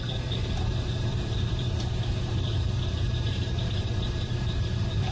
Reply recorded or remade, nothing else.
remade